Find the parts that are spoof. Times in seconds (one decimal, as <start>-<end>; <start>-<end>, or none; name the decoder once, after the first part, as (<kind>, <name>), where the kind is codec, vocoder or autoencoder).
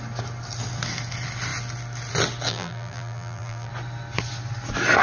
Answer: 2.5-3.7 (vocoder, BigVGAN v2)